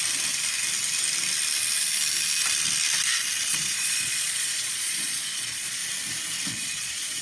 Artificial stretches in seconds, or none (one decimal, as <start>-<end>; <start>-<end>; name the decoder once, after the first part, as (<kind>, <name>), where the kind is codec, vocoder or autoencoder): 3.5-5.8 (vocoder, Vocos); 6.5-7.2